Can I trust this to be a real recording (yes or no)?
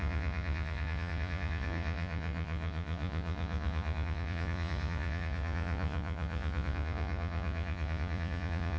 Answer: no